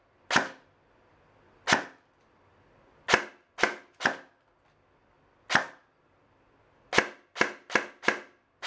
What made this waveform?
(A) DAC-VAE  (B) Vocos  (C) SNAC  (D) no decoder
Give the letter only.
D